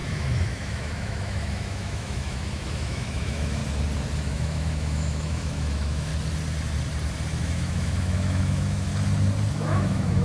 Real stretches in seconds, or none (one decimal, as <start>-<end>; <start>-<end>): 3.6-4.3; 6.1-7.4; 8.9-9.5